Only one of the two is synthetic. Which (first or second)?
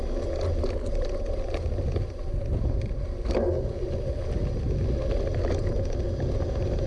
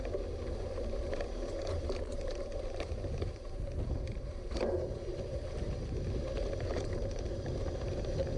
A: second